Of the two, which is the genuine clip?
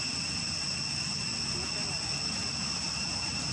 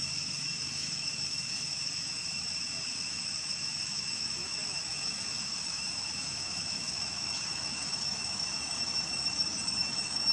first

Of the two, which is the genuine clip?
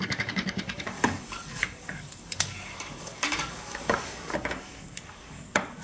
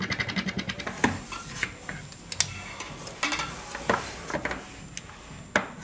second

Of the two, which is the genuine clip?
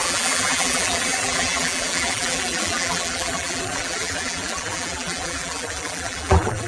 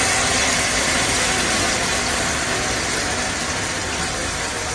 second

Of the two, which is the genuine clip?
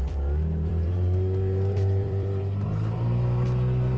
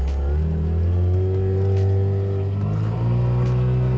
second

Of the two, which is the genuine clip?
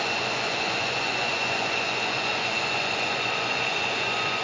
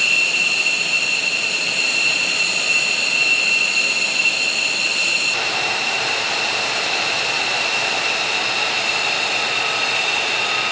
second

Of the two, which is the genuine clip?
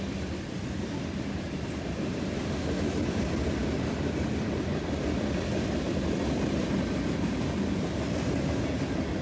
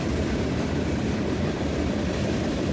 first